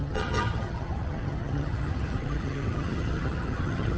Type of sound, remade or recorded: remade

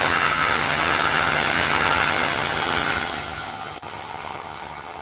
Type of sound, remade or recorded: remade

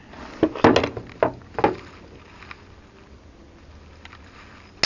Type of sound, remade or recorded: recorded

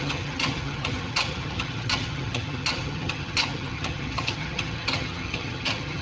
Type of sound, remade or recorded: remade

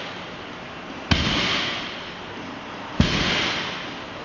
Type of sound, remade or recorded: recorded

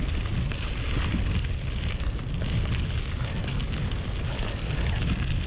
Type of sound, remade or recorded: recorded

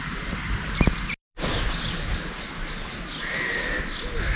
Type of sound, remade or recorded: recorded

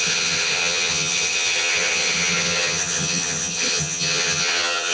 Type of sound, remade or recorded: remade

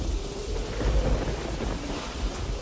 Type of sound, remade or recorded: recorded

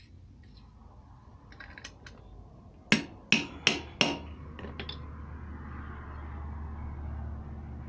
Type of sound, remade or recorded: recorded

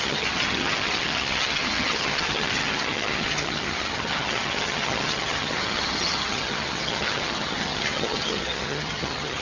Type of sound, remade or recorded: remade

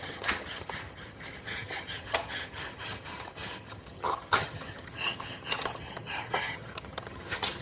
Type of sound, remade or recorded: remade